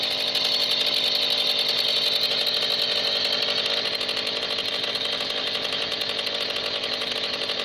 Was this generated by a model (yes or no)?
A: no